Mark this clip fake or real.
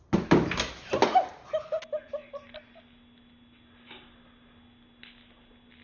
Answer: real